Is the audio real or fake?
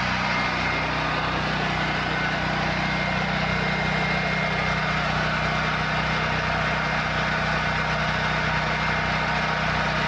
real